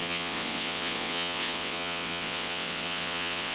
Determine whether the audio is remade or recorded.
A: remade